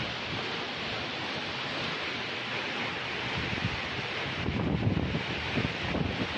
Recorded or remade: remade